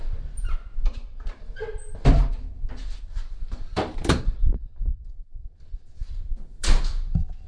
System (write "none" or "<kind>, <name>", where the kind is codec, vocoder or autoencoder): vocoder, BigVGAN v2